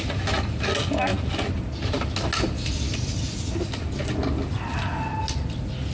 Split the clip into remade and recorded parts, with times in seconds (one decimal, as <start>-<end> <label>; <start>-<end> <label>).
0.0-5.9 recorded